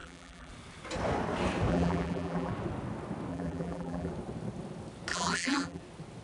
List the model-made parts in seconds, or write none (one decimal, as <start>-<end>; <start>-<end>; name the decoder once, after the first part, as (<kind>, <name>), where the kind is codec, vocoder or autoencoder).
0.0-0.5 (vocoder, BigVGAN v2); 1.7-2.5; 3.3-4.1; 5.1-5.8